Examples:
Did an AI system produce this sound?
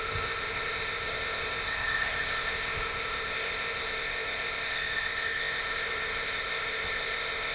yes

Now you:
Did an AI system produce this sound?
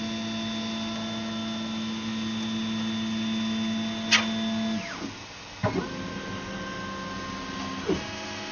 no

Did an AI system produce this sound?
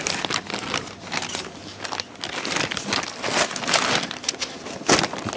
no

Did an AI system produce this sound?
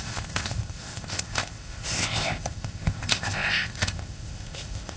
yes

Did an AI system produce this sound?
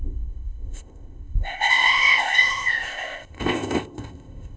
yes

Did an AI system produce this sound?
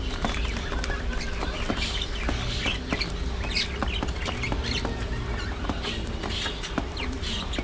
no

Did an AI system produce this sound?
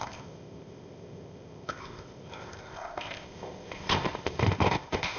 yes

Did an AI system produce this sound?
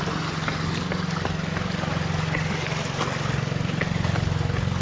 no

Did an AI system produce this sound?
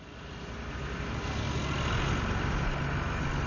no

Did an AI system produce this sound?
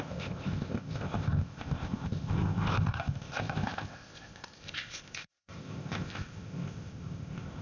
yes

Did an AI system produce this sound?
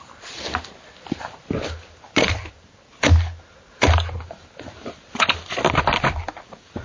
no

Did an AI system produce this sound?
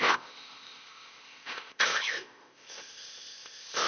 yes